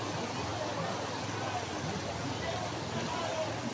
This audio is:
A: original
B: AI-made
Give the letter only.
A